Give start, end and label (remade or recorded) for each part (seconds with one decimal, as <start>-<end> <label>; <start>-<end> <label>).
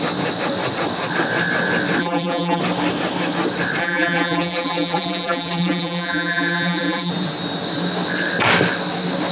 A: 0.0-2.0 recorded; 2.0-2.6 remade; 2.6-3.8 recorded; 3.8-7.1 remade; 7.1-9.3 recorded